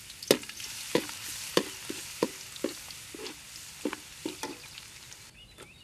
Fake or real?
real